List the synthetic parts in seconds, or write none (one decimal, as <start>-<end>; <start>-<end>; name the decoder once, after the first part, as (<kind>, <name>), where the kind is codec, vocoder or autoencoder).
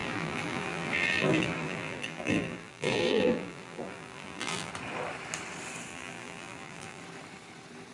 0.0-4.7 (vocoder, BigVGAN v2); 5.9-7.0